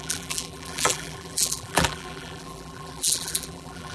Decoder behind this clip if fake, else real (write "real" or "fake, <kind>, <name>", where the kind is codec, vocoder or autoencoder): fake, vocoder, BigVGAN v2